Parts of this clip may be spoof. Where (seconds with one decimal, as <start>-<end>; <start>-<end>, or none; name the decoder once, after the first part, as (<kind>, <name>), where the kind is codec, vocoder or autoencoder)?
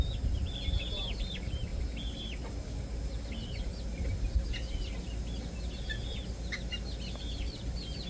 none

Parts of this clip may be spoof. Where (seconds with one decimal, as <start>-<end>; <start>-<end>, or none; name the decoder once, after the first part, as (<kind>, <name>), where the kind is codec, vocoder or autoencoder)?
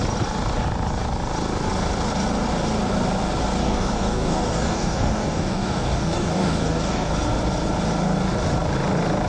3.6-7.1 (codec, DAC)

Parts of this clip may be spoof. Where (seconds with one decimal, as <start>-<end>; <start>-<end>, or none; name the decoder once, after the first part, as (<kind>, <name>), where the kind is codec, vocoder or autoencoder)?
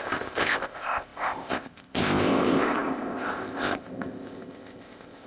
0.0-5.3 (codec, ZipCodec)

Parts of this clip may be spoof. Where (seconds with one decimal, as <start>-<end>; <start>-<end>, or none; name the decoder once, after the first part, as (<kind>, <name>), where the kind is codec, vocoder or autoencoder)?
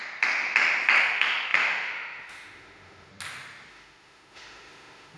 1.0-3.1 (autoencoder, DAC-VAE); 3.7-5.2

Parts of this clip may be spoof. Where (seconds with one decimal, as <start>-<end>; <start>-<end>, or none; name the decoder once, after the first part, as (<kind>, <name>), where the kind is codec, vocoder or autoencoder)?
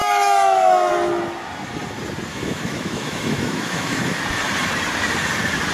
0.0-0.9 (autoencoder, DAC-VAE); 2.3-4.2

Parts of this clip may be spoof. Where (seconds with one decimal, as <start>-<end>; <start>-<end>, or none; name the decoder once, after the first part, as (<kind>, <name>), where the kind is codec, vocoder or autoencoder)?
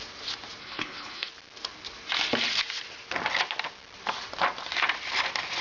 0.6-1.3 (codec, HILCodec)